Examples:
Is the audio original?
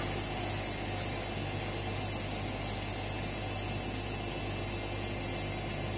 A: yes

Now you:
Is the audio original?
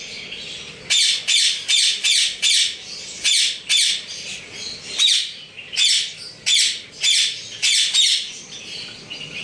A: yes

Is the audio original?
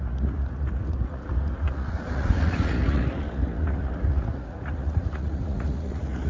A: no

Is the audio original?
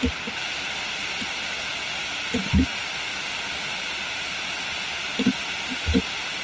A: yes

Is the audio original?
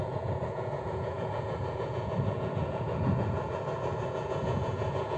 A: no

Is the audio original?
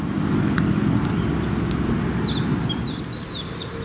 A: yes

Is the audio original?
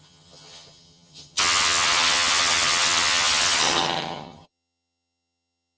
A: no